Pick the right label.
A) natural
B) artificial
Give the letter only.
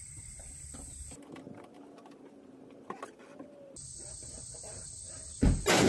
A